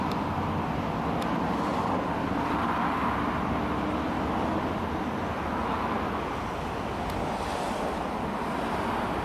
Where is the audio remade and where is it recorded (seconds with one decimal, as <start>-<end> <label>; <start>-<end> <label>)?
0.0-9.2 recorded